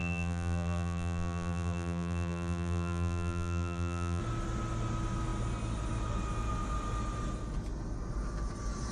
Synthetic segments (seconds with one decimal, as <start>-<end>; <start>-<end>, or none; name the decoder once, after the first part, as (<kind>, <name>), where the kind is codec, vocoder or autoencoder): 0.0-4.2 (vocoder, BigVGAN v2)